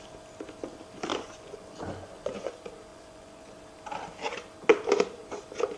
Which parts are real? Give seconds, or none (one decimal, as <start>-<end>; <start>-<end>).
0.0-1.1; 2.5-2.9; 3.6-5.8

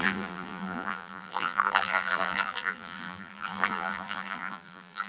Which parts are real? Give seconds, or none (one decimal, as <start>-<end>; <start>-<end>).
none